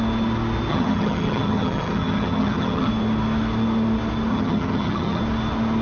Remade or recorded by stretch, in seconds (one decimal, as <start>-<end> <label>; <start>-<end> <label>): 0.0-0.7 recorded; 0.7-2.9 remade; 2.9-4.3 recorded; 4.3-5.2 remade; 5.2-5.8 recorded